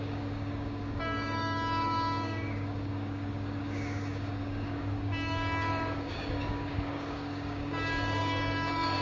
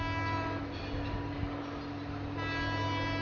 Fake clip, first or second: first